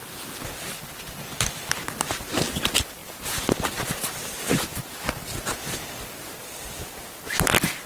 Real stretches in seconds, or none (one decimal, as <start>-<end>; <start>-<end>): 0.0-7.9